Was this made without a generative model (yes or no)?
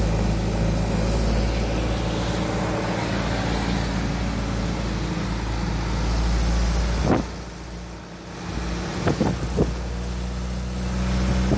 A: yes